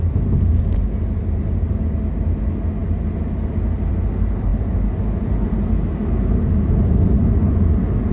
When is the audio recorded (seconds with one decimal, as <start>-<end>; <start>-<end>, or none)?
0.0-8.1